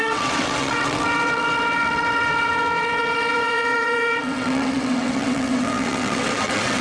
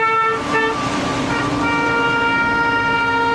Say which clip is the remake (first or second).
first